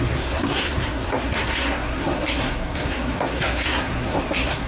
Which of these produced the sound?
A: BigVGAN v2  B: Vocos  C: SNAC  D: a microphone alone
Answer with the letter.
C